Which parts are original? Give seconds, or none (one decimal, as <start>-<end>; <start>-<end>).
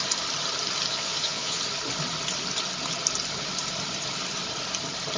0.0-0.9; 1.6-5.2